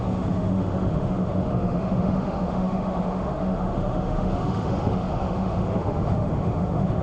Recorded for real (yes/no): no